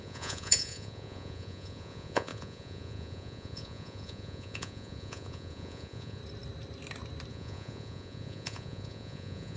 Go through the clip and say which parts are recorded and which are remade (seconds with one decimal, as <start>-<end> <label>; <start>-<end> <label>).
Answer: 0.0-6.2 remade; 6.2-7.3 recorded; 7.3-9.6 remade